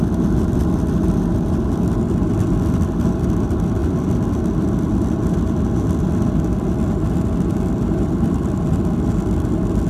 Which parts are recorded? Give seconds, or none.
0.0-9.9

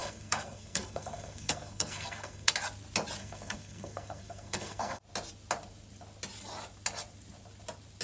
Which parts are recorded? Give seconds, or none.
2.5-3.2; 5.0-8.0

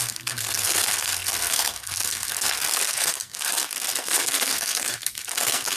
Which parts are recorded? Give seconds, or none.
none

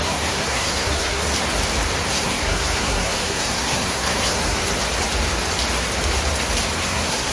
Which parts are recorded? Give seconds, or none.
1.2-2.1; 4.6-6.8

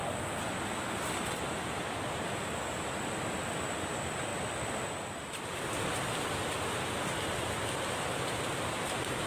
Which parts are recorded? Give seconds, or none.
0.0-9.3